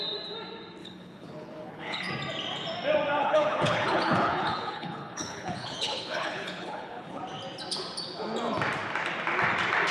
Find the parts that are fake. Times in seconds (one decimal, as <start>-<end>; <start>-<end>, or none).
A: 0.8-2.1; 3.2-7.2